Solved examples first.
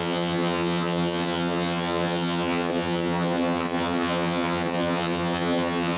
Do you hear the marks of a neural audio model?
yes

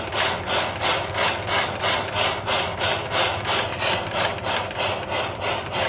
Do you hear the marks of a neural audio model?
no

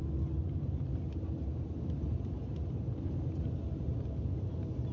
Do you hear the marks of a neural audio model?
no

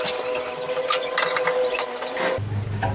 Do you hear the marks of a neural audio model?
no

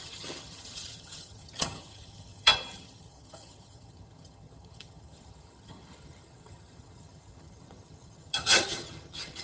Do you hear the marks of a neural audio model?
yes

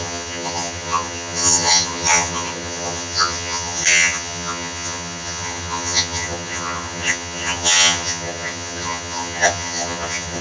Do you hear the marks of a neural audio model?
yes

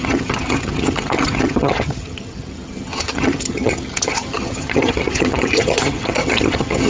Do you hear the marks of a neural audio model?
yes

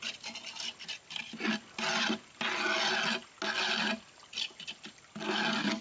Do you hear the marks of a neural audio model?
no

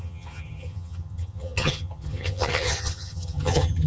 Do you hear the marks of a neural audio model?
yes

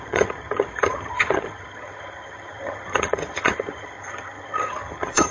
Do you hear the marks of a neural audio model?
yes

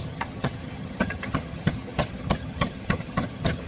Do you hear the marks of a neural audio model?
yes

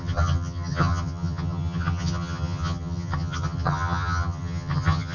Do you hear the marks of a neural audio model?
yes